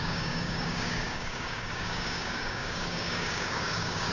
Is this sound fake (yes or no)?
yes